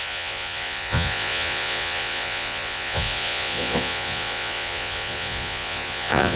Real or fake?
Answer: fake